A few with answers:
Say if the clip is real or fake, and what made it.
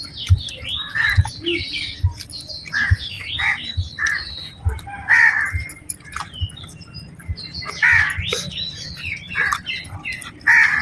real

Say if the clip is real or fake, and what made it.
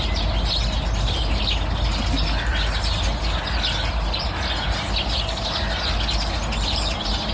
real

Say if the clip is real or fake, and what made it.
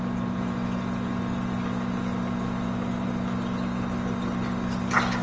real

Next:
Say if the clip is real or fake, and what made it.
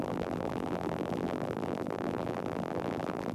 fake, vocoder, BigVGAN v2